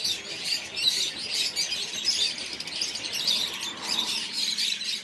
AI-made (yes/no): yes